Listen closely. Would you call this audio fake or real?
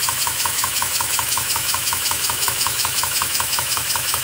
fake